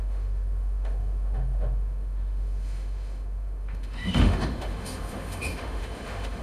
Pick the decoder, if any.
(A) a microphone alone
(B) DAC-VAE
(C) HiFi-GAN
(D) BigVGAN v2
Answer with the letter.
B